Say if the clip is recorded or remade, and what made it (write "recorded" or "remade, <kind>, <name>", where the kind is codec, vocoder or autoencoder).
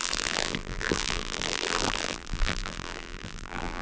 remade, vocoder, BigVGAN v2